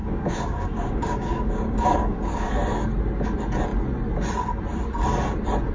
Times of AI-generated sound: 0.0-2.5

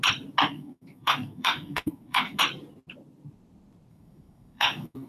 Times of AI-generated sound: 0.5-2.4; 3.9-5.1

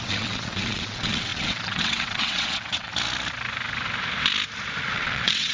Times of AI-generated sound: 0.0-2.9; 4.8-5.5

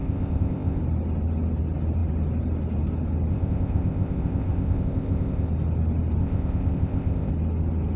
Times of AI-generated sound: 0.0-0.8; 3.3-5.5; 6.2-7.3

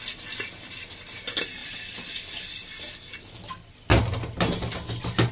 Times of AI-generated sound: none

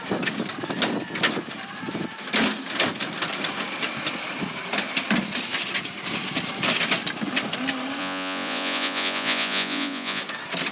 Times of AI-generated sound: 8.0-10.2